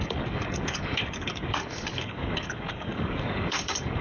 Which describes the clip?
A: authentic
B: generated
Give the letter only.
B